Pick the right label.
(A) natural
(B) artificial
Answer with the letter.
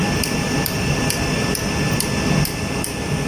A